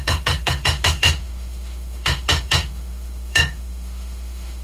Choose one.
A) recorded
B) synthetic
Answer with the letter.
B